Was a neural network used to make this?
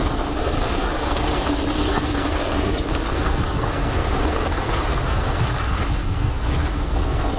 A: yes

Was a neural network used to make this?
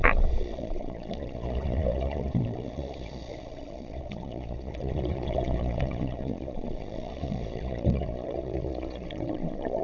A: yes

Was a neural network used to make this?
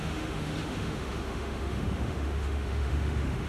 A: yes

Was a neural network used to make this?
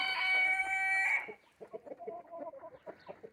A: no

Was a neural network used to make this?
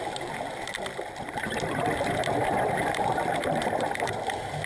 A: yes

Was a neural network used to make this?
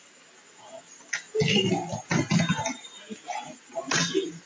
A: no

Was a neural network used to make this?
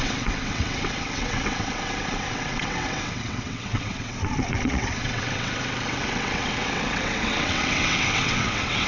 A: yes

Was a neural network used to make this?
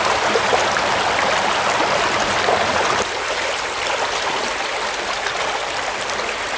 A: no